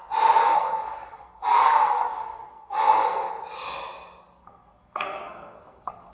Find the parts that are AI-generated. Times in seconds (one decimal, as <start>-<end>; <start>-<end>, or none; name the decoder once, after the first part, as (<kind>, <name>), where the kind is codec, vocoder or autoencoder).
0.4-3.3 (codec, SNAC); 4.4-6.1